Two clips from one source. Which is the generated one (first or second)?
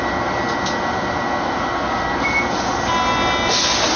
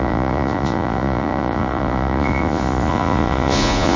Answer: second